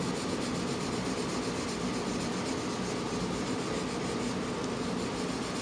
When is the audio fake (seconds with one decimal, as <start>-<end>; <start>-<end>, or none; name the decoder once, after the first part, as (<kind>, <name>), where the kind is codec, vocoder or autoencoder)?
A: none